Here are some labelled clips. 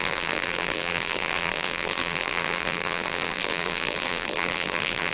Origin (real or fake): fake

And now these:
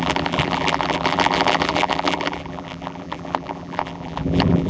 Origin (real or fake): fake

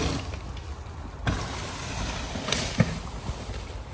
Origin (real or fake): real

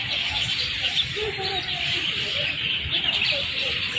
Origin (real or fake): real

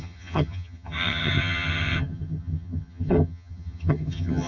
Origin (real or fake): fake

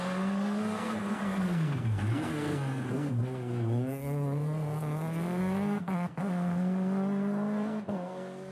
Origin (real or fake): fake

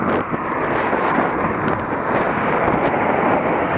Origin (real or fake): real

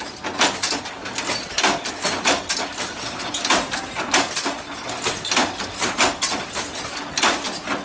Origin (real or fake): real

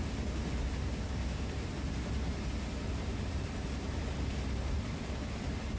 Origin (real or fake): real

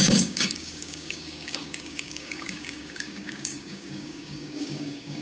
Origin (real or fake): fake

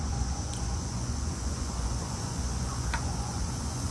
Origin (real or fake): fake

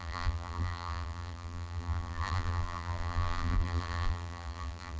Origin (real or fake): fake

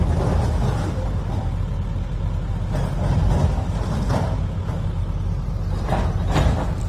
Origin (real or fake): real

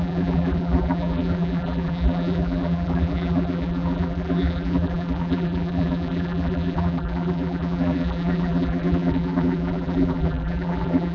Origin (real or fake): fake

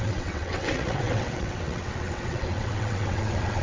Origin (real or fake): fake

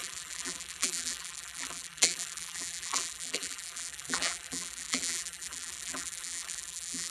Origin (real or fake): fake